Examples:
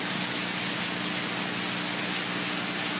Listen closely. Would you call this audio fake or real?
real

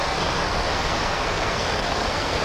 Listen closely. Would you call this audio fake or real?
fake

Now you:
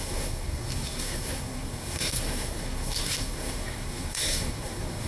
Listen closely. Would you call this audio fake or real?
fake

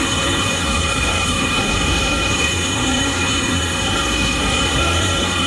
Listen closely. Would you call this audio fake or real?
fake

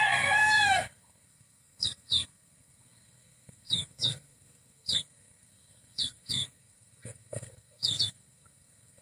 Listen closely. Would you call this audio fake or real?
fake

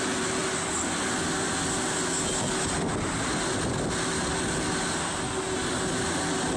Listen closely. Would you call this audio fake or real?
real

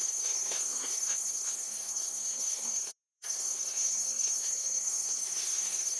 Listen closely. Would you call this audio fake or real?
fake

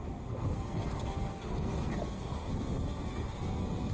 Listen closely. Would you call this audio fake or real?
fake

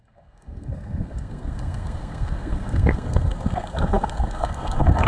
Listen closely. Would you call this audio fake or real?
fake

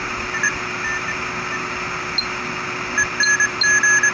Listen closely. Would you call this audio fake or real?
real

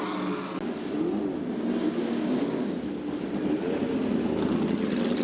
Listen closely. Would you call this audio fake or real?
real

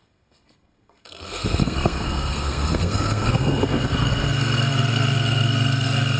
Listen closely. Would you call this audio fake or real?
fake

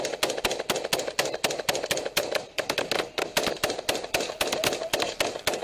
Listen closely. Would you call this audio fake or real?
real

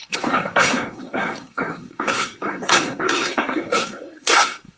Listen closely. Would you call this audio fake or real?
fake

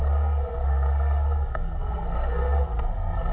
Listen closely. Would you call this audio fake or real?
fake